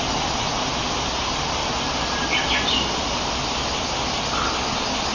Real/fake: real